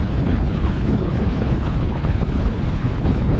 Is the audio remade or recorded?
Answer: remade